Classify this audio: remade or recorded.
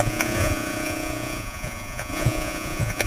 remade